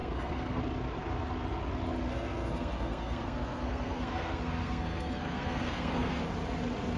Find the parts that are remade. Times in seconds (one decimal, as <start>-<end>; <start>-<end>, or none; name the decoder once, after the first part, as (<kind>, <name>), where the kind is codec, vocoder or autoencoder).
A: 0.0-0.6 (codec, SNAC); 2.1-6.2